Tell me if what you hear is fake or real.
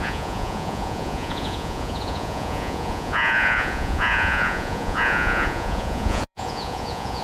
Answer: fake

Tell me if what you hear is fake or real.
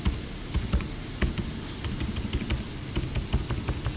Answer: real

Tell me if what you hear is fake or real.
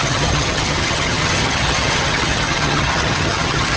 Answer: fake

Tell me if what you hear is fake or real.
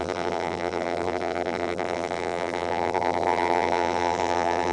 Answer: fake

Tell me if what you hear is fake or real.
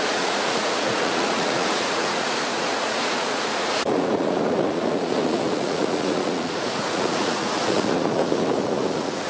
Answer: fake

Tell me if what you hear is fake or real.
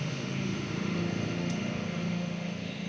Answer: fake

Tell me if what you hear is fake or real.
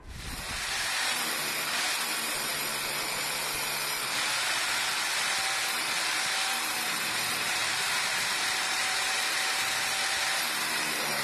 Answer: fake